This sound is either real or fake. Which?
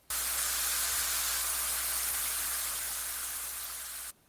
real